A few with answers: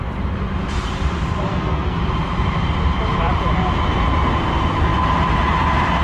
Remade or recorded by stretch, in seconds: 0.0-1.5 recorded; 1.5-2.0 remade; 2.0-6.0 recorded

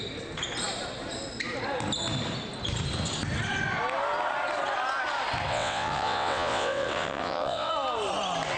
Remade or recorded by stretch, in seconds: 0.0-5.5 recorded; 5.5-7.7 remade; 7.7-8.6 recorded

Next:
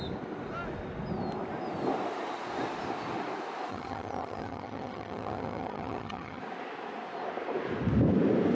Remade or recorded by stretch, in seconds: 0.0-3.7 recorded; 3.7-6.4 remade; 6.4-8.5 recorded

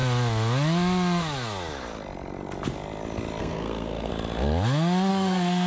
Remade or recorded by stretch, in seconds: 0.0-3.4 recorded; 3.4-4.1 remade; 4.1-5.1 recorded; 5.1-5.7 remade